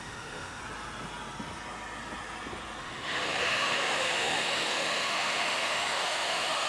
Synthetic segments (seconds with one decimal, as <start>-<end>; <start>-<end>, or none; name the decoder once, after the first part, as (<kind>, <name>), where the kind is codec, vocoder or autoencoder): 0.0-0.6 (autoencoder, DAC-VAE); 2.8-6.7